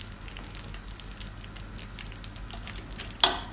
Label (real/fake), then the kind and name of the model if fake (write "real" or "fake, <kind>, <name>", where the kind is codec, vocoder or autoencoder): real